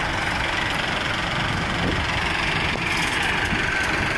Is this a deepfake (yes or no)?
no